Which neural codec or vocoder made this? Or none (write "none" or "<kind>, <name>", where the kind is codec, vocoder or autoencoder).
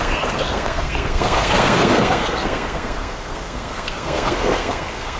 codec, SNAC